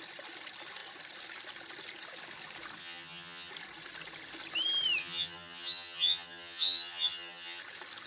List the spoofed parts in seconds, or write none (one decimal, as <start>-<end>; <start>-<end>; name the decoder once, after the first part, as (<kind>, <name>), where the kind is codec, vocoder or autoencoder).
2.8-3.5 (vocoder, HiFi-GAN); 5.0-7.6